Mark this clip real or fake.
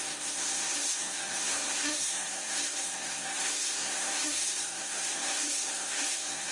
fake